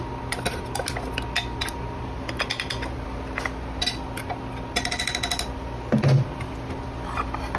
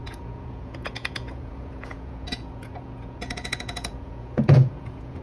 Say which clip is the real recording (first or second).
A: first